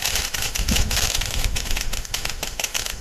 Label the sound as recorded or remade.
remade